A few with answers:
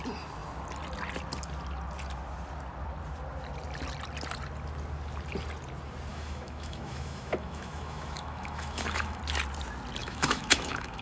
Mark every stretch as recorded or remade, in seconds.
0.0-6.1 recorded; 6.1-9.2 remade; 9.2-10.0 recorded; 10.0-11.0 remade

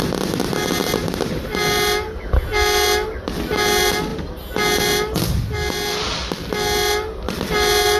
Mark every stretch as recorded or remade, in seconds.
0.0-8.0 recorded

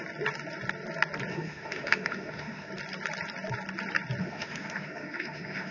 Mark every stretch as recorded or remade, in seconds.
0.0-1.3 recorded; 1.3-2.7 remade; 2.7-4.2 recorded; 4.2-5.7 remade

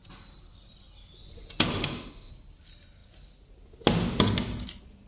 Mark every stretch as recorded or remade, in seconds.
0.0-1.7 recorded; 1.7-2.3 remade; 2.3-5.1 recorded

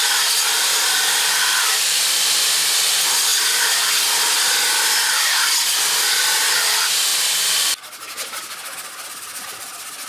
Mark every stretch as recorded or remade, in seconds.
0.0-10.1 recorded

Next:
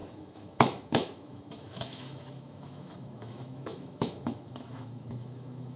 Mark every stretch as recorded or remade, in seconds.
0.0-5.8 remade

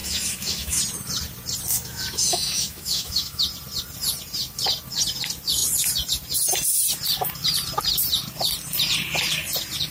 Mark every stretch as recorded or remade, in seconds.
0.0-0.8 remade; 0.8-1.7 recorded; 1.7-3.4 remade; 3.4-9.9 recorded